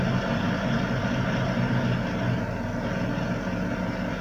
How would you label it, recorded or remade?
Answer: recorded